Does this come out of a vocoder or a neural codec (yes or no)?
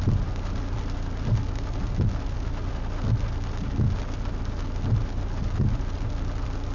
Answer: no